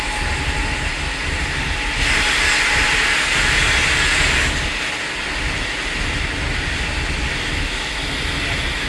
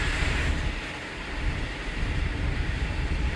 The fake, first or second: second